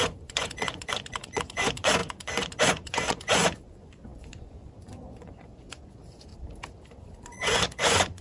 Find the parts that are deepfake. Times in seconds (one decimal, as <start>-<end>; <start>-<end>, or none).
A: 0.0-6.3; 7.2-8.2